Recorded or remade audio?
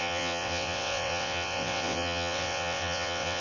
remade